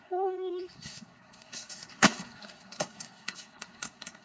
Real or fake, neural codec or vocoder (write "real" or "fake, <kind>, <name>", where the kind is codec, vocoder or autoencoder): fake, codec, SNAC